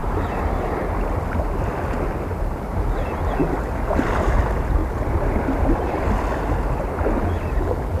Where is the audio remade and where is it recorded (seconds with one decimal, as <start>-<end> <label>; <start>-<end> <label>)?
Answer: 0.0-4.8 recorded; 4.8-6.2 remade; 6.2-8.0 recorded